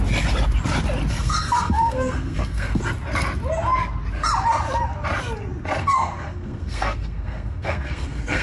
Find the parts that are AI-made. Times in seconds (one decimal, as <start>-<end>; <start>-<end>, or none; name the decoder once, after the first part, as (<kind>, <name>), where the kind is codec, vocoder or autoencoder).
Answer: 1.1-2.8 (codec, SNAC); 5.8-8.4